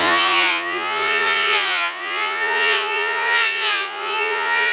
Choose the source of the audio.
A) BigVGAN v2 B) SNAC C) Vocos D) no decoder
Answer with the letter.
C